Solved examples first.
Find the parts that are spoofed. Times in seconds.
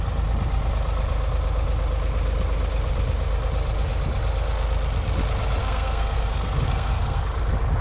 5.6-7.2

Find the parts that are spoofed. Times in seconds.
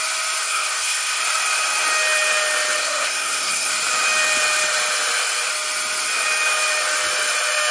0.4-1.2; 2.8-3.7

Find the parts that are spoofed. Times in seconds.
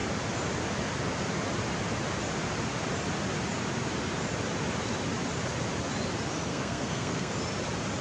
6.5-7.3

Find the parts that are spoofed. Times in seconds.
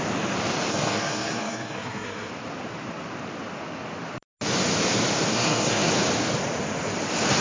0.7-2.3; 5.3-5.9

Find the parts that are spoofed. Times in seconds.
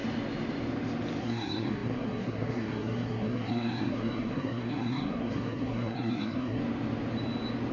1.2-6.6